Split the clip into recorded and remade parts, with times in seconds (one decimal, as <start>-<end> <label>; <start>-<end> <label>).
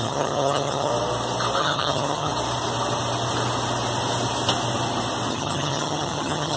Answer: 0.0-0.9 remade; 0.9-1.6 recorded; 1.6-2.3 remade; 2.3-5.3 recorded; 5.3-6.6 remade